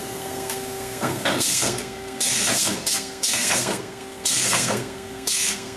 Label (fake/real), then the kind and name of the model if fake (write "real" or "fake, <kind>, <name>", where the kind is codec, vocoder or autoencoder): fake, codec, SNAC